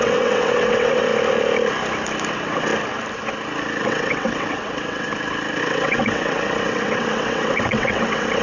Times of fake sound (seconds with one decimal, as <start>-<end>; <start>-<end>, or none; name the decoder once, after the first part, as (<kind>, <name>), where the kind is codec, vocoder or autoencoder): 0.0-1.1 (vocoder, WaveNeXt); 2.3-2.7; 3.8-5.1; 5.6-8.4